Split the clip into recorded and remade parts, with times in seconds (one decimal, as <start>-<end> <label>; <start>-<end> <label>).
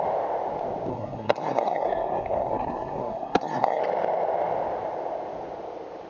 0.0-0.9 recorded; 0.9-3.8 remade; 3.8-6.1 recorded